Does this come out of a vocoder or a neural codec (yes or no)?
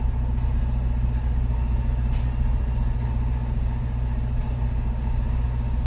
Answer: no